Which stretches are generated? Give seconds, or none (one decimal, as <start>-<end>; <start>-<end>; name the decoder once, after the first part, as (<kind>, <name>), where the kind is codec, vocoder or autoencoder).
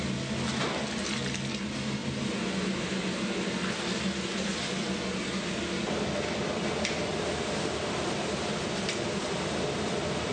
2.0-3.2 (vocoder, BigVGAN v2); 7.1-7.7